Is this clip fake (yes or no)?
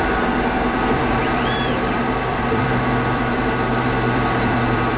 yes